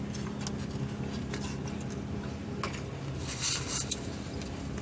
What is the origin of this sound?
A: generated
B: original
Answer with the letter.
B